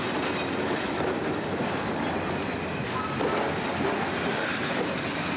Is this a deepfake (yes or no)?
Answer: no